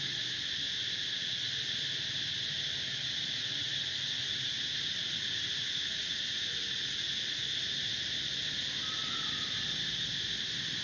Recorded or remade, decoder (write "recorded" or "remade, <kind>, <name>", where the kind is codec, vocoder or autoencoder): recorded